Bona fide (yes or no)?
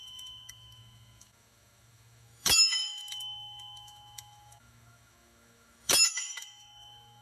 no